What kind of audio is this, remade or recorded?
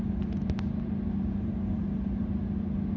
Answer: recorded